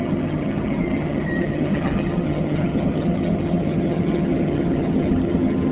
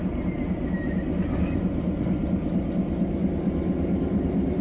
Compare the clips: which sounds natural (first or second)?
second